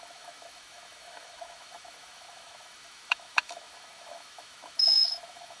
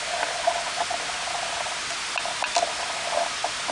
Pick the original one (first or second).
second